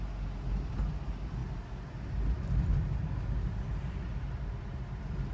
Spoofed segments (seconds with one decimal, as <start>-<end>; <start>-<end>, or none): none